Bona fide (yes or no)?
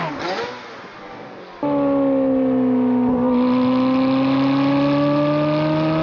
yes